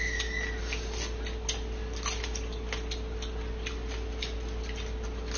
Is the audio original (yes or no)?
yes